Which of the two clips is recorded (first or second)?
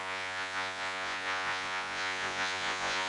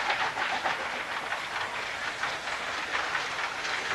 second